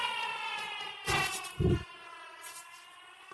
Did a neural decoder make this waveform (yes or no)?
no